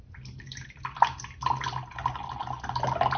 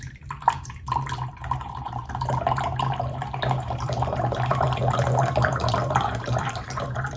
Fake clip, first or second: second